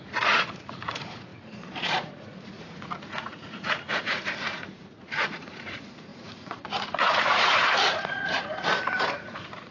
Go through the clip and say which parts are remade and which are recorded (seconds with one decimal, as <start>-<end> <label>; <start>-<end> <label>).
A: 0.0-9.7 remade